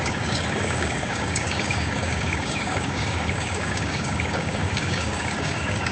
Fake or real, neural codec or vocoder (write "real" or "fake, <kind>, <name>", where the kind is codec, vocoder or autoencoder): fake, codec, DAC